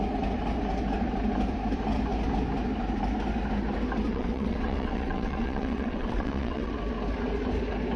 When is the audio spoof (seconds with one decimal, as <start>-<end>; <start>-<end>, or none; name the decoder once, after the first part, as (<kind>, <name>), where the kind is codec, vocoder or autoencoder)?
4.1-6.7 (vocoder, WaveNeXt)